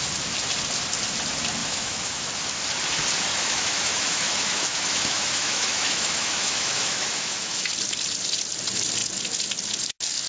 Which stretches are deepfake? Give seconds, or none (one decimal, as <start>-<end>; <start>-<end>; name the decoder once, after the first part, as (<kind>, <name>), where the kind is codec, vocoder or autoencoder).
1.6-2.3 (autoencoder, DAC-VAE); 3.3-7.7